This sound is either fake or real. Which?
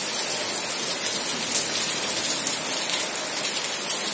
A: real